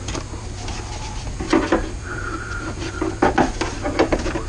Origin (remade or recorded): recorded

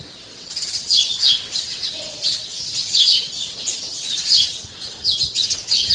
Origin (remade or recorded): remade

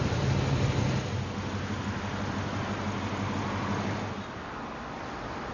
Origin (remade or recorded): recorded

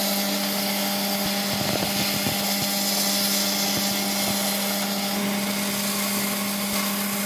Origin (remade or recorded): recorded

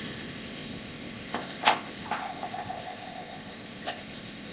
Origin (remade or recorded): remade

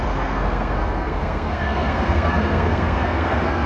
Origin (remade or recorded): remade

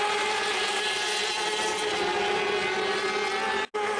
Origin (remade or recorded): recorded